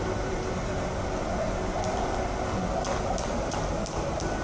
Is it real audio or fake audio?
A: real